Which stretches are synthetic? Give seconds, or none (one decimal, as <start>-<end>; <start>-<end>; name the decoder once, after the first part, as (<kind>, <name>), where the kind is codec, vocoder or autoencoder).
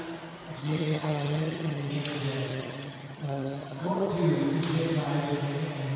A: 0.6-1.9 (vocoder, HiFi-GAN); 2.5-4.1